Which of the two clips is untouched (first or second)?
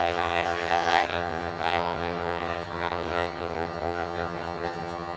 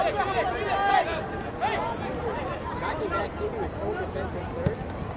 second